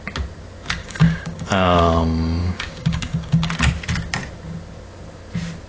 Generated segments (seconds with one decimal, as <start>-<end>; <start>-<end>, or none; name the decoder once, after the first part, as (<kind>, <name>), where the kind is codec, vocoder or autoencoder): 0.8-1.5 (codec, DAC); 2.4-3.5